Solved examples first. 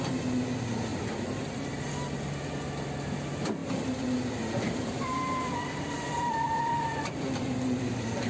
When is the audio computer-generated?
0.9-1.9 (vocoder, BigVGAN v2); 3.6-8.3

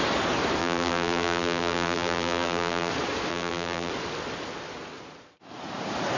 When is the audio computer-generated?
0.6-2.9 (vocoder, BigVGAN v2); 3.3-3.9